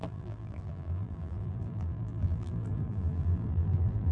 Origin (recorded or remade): remade